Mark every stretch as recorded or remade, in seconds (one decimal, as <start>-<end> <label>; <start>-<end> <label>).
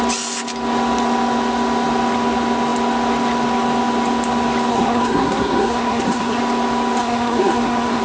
0.0-4.7 recorded; 4.7-6.4 remade; 6.4-7.0 recorded; 7.0-8.0 remade